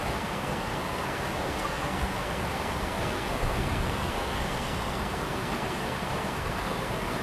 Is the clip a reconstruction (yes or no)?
yes